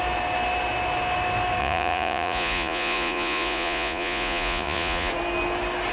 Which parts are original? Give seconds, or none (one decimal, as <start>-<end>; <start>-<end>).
0.0-1.6; 5.1-5.9

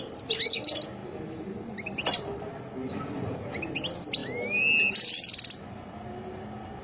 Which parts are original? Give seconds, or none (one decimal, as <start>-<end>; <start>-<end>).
0.0-1.0; 2.5-6.8